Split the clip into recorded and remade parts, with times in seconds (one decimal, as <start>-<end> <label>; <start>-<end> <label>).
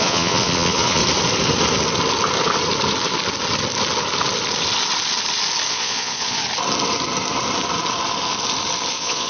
0.0-1.0 remade; 1.0-5.7 recorded; 5.7-6.4 remade; 6.4-8.9 recorded; 8.9-9.3 remade